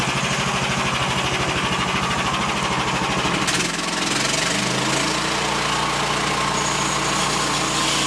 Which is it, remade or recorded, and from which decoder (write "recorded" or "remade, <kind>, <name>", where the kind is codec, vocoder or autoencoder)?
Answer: recorded